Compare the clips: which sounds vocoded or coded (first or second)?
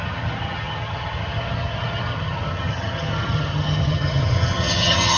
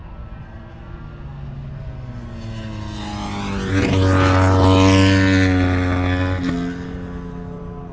first